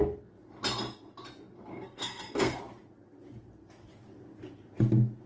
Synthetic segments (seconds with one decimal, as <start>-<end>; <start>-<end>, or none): 1.7-2.6

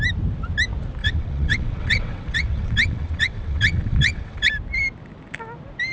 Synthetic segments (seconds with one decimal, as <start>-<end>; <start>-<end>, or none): 1.0-4.5

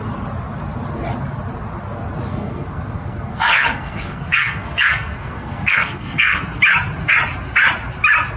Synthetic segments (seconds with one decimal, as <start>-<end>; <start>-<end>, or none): 2.3-6.4

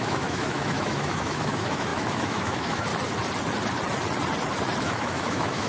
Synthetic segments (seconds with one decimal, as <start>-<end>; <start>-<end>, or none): 0.0-2.9; 4.8-5.7

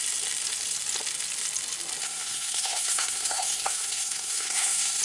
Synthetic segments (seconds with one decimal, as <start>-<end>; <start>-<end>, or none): 2.0-5.0

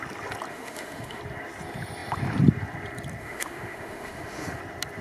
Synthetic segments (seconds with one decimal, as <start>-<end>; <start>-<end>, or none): 0.5-1.2; 3.2-4.6

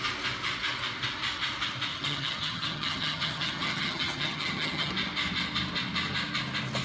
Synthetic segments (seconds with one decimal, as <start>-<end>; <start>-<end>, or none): 1.9-4.9

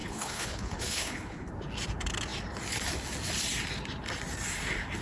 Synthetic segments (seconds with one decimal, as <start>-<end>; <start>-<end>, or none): 0.0-1.5